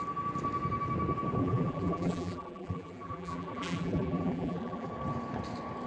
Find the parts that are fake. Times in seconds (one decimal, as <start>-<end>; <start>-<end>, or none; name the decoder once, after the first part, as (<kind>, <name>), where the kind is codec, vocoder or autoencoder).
1.4-4.9 (vocoder, BigVGAN v2)